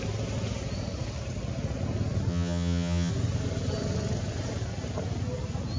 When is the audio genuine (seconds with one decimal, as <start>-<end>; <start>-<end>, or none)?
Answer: 0.0-2.3; 3.1-5.8